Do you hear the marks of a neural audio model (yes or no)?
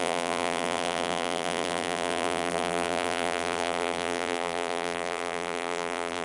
yes